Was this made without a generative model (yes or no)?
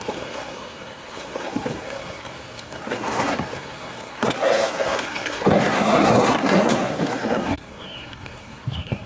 no